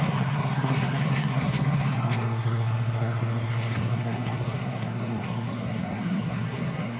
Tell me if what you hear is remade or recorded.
remade